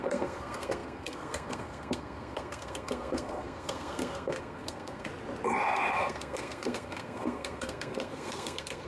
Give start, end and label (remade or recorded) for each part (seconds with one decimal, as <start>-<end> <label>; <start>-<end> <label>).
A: 0.0-5.1 remade; 5.1-5.9 recorded; 5.9-8.9 remade

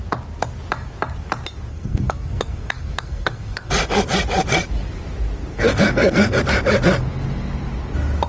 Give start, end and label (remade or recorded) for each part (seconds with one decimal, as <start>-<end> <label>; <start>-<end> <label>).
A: 0.0-1.7 recorded; 1.7-3.7 remade; 3.7-5.5 recorded; 5.5-6.4 remade; 6.4-8.3 recorded

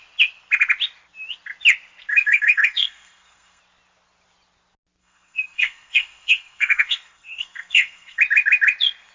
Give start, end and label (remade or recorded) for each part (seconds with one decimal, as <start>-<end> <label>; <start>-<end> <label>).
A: 0.0-2.1 recorded; 2.1-3.6 remade; 3.6-5.0 recorded; 5.0-8.2 remade; 8.2-9.1 recorded

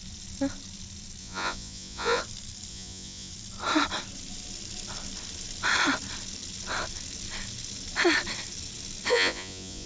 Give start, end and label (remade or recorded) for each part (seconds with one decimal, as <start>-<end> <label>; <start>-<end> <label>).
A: 0.0-1.2 recorded; 1.2-2.2 remade; 2.2-2.7 recorded; 2.7-3.3 remade; 3.3-9.1 recorded; 9.1-9.9 remade

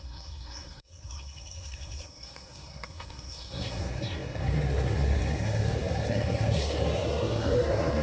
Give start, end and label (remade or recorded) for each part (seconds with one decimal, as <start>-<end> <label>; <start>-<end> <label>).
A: 0.0-8.0 remade

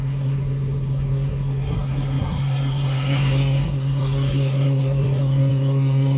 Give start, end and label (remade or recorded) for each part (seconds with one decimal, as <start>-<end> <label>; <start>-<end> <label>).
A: 0.0-6.2 remade

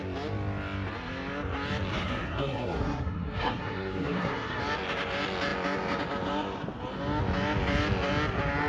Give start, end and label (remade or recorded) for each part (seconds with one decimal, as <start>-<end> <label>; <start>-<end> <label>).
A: 0.0-1.9 recorded; 1.9-4.6 remade; 4.6-8.7 recorded

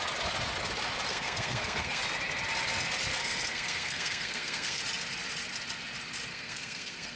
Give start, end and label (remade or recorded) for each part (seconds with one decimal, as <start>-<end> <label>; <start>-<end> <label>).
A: 0.0-1.1 recorded; 1.1-2.0 remade; 2.0-3.2 recorded; 3.2-4.8 remade; 4.8-6.3 recorded; 6.3-7.2 remade